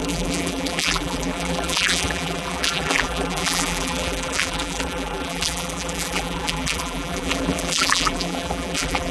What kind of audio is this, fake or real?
fake